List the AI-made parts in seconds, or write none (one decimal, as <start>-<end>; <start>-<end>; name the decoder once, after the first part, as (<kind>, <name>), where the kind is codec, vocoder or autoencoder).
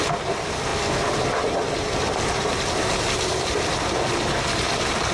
0.0-5.1 (vocoder, BigVGAN v2)